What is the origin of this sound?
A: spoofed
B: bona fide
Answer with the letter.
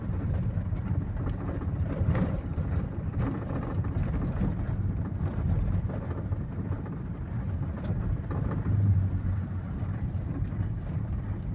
A